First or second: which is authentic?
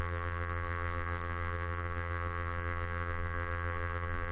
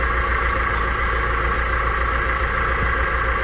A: second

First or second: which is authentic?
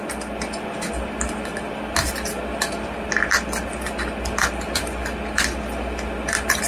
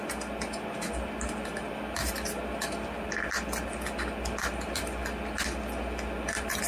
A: second